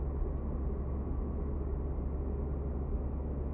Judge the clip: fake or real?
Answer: real